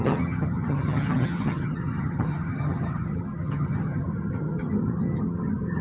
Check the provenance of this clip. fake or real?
fake